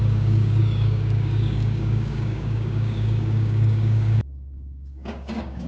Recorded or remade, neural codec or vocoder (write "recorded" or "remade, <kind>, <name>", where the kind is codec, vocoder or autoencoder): remade, codec, DAC